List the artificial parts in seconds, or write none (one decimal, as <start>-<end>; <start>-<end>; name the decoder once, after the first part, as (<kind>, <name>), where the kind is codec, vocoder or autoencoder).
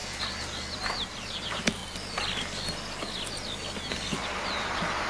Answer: 0.8-1.8 (vocoder, BigVGAN v2); 3.9-5.1